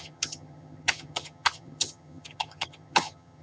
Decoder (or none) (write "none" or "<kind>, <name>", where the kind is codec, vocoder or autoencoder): vocoder, HiFi-GAN